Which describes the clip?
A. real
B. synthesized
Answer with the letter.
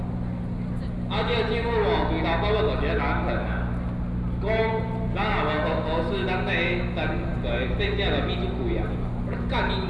A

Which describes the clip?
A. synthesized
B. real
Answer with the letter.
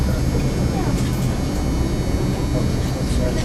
B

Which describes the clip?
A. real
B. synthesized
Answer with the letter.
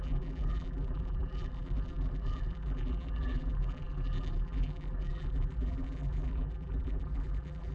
B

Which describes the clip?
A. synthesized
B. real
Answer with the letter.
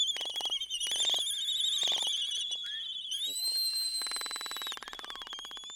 B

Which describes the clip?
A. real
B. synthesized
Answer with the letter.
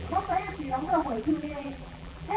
B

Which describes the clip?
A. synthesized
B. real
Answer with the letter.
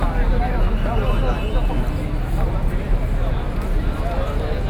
B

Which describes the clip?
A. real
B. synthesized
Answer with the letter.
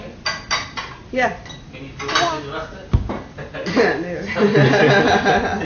A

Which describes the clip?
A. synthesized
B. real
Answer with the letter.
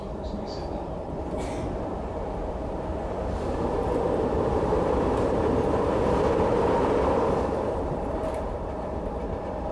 A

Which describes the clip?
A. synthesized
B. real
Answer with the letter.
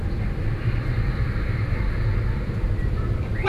A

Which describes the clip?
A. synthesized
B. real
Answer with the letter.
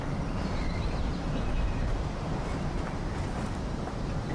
A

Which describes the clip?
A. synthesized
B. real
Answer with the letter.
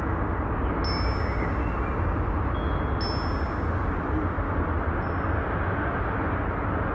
B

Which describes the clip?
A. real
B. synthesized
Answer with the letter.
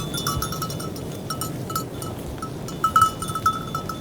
A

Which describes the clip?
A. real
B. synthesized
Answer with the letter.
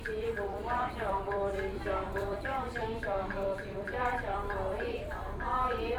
B